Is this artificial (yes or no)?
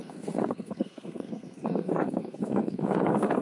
yes